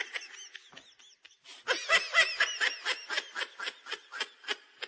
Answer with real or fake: real